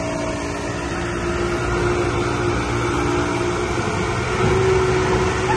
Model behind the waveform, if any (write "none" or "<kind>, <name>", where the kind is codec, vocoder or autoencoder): none